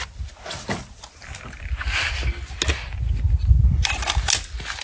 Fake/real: real